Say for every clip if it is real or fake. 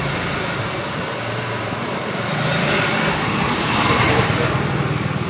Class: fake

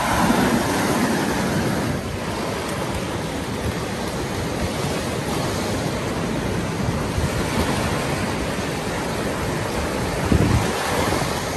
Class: real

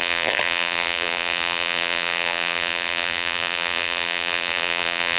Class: fake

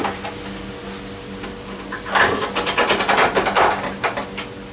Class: real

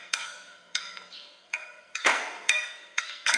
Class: fake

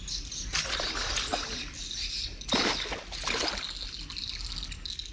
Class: real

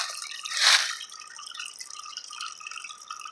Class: fake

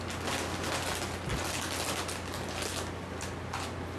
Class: real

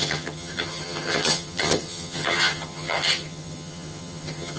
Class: fake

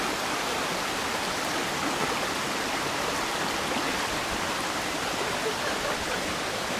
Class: real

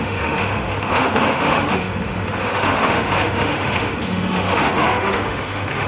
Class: fake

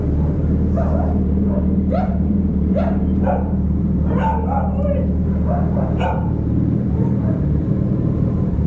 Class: fake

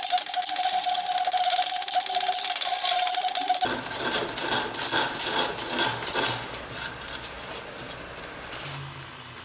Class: real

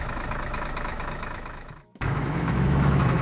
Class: fake